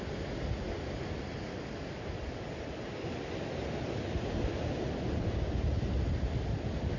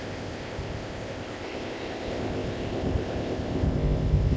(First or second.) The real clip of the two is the first